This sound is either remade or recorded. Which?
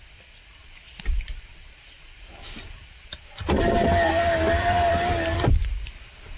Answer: remade